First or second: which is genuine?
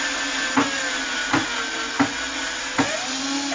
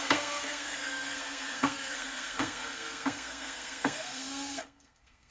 first